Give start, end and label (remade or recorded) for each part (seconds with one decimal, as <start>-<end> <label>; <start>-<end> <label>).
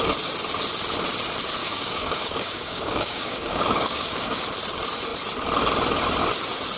0.0-1.6 recorded; 1.6-4.4 remade; 4.4-6.8 recorded